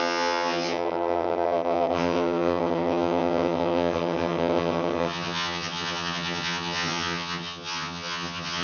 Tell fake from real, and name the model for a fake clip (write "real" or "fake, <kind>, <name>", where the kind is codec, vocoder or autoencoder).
fake, vocoder, HiFi-GAN